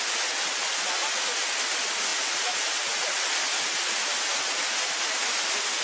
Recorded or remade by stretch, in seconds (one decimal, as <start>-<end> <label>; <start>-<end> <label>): 0.0-5.8 recorded